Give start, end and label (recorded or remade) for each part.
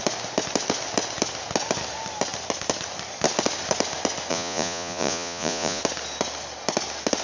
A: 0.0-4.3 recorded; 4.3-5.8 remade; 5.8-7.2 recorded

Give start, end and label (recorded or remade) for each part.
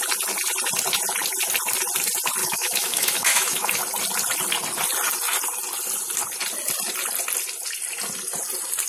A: 0.0-2.4 recorded; 2.4-3.8 remade; 3.8-8.9 recorded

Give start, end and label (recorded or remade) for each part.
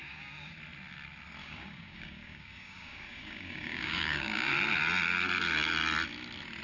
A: 0.0-0.5 remade; 0.5-1.4 recorded; 1.4-4.5 remade; 4.5-6.6 recorded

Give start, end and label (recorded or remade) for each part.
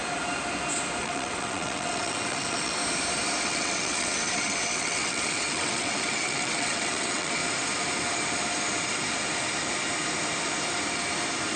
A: 0.0-1.0 recorded; 1.0-2.8 remade; 2.8-3.4 recorded; 3.4-7.4 remade; 7.4-11.6 recorded